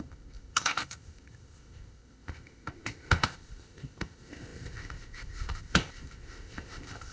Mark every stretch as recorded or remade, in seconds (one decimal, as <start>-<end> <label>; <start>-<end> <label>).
0.0-7.1 remade